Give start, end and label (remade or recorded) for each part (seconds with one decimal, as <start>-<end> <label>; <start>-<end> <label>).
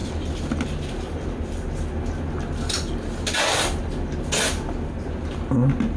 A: 0.0-6.0 recorded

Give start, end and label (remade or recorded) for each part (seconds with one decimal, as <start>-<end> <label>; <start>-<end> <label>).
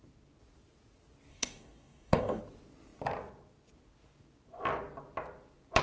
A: 0.0-1.3 recorded; 1.3-2.4 remade; 2.4-5.8 recorded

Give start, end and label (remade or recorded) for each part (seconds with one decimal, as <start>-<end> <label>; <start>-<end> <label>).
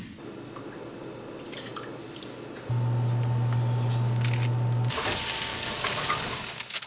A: 0.0-5.5 recorded; 5.5-6.9 remade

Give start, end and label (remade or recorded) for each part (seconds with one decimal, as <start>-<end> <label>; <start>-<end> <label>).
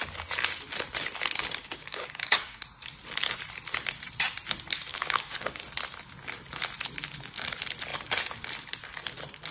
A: 0.0-1.6 recorded; 1.6-2.6 remade; 2.6-4.9 recorded; 4.9-5.6 remade; 5.6-9.5 recorded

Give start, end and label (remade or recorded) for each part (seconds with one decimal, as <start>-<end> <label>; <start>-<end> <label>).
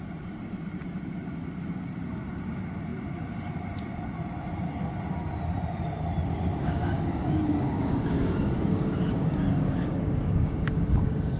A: 0.0-6.6 recorded; 6.6-11.4 remade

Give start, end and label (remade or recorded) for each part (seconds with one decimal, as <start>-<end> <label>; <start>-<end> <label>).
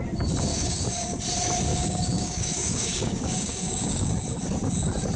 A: 0.0-0.5 recorded; 0.5-1.2 remade; 1.2-1.7 recorded; 1.7-4.1 remade; 4.1-5.2 recorded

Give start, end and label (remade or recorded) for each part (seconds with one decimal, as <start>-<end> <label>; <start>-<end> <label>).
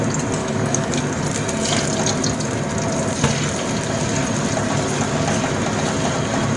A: 0.0-0.4 recorded; 0.4-1.0 remade; 1.0-6.6 recorded